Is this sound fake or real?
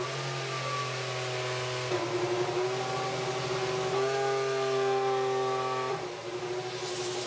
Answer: real